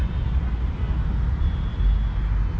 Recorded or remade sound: recorded